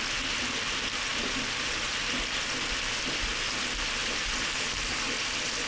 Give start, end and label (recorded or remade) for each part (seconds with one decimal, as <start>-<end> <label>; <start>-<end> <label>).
0.0-1.1 recorded; 1.1-2.0 remade; 2.0-4.0 recorded; 4.0-5.0 remade; 5.0-5.7 recorded